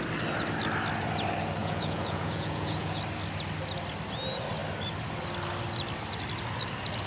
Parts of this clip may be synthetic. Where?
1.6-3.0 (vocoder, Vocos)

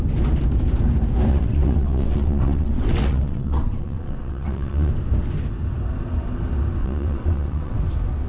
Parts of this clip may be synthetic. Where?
1.3-4.9 (vocoder, WaveNeXt); 6.8-7.8

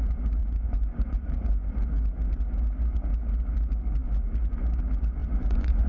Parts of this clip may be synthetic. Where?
0.4-1.7 (vocoder, Vocos); 5.2-5.9

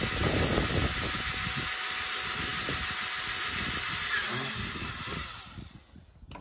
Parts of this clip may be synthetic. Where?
none

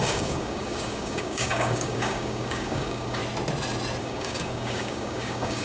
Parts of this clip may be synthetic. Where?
0.0-3.2 (codec, DAC); 4.0-5.6

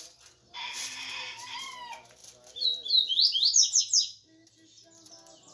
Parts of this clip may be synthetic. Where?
none

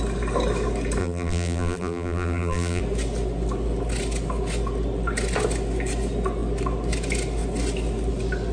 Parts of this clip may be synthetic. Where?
1.0-2.8 (vocoder, BigVGAN v2)